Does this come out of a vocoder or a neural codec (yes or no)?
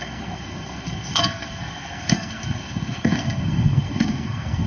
yes